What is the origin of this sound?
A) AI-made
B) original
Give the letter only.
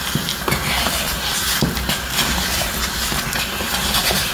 B